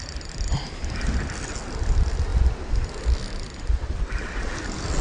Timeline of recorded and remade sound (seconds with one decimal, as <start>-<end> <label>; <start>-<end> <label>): 0.0-5.0 recorded